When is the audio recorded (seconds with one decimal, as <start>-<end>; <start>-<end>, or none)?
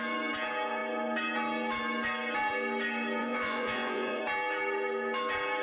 0.0-3.2; 4.2-5.6